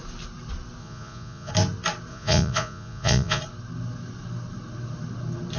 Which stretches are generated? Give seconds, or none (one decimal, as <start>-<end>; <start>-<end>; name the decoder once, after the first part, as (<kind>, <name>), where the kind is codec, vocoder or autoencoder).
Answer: 0.8-1.5 (vocoder, Vocos); 2.1-3.4